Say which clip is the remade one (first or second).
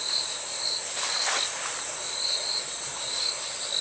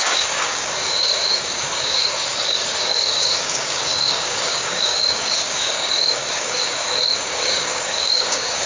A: second